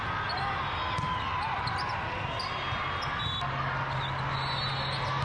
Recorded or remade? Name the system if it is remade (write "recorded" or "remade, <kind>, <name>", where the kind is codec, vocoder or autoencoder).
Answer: recorded